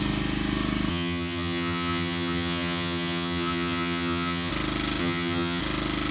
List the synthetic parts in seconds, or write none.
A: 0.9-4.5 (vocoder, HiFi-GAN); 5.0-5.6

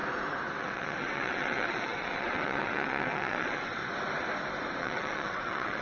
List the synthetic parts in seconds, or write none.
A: 0.6-3.8 (vocoder, WaveNeXt); 4.8-5.8

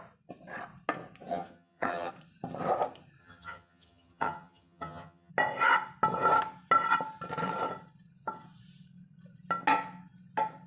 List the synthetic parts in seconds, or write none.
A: 1.3-2.1 (vocoder, HiFi-GAN); 3.2-5.3